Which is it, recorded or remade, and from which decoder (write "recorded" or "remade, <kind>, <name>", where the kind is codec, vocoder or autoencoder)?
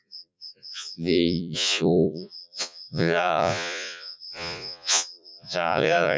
remade, vocoder, Vocos